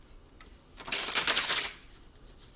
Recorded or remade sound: recorded